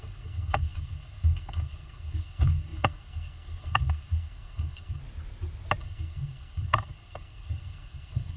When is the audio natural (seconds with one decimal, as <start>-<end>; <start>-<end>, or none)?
5.0-5.8

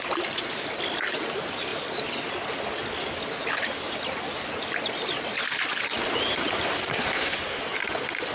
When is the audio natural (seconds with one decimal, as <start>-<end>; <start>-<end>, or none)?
0.0-6.9; 7.6-8.3

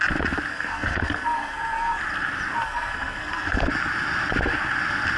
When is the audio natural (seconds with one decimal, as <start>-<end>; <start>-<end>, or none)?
0.0-0.5; 2.0-2.5; 3.7-5.2

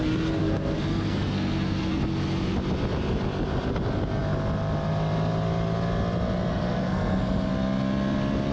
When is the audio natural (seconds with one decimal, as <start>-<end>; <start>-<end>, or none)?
0.0-0.4; 2.0-6.5; 7.5-8.5

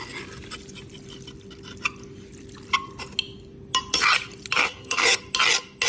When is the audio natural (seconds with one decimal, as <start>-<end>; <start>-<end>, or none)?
0.0-4.6; 5.2-5.9